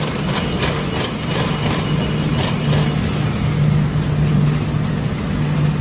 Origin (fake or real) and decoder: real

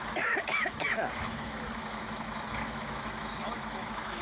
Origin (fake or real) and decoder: fake, autoencoder, DAC-VAE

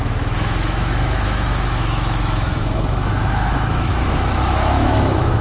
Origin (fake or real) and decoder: fake, autoencoder, DAC-VAE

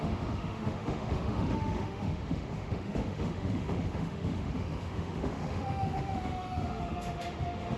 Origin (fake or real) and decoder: fake, autoencoder, DAC-VAE